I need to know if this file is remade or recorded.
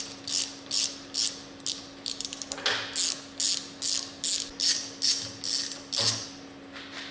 recorded